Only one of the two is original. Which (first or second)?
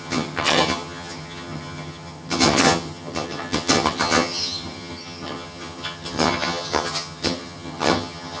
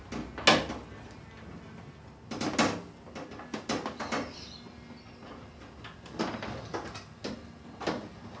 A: second